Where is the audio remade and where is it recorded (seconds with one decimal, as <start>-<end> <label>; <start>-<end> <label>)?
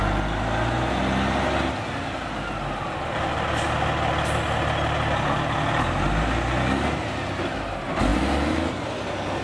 0.0-9.4 recorded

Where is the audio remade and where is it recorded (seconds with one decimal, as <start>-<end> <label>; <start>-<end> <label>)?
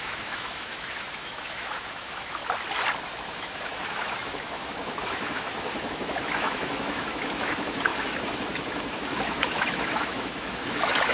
0.0-2.4 remade; 2.4-3.2 recorded; 3.2-11.1 remade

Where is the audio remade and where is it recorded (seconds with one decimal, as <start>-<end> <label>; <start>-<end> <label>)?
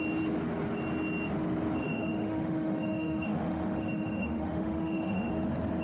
0.0-1.8 recorded; 1.8-5.3 remade; 5.3-5.8 recorded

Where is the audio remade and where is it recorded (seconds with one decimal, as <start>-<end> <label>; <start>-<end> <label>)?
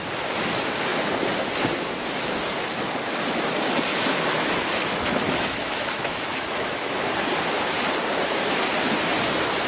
0.0-3.9 recorded; 3.9-6.9 remade; 6.9-9.7 recorded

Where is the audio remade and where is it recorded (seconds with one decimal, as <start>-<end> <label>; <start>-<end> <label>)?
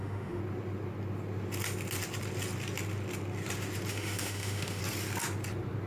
0.0-0.4 remade; 0.4-3.9 recorded; 3.9-4.8 remade; 4.8-5.9 recorded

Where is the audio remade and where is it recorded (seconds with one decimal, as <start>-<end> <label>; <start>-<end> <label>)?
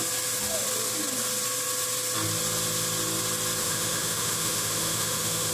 0.0-3.6 recorded; 3.6-5.5 remade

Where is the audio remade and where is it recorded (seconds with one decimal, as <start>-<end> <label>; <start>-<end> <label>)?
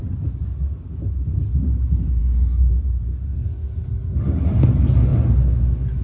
0.0-6.0 recorded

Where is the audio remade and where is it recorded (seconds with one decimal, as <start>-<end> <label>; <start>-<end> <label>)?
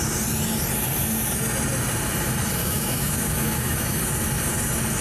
0.0-2.6 recorded; 2.6-4.0 remade; 4.0-5.0 recorded